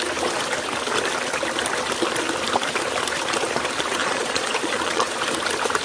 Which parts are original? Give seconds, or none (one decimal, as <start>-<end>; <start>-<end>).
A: 0.0-4.0; 5.2-5.8